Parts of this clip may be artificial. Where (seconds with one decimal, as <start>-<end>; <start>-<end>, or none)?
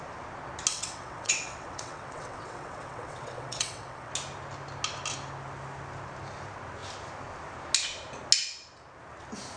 0.7-4.1